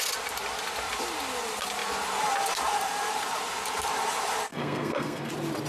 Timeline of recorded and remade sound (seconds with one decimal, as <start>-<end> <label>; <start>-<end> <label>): 0.0-4.5 recorded; 4.5-5.3 remade; 5.3-5.7 recorded